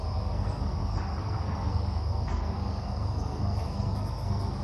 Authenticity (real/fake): fake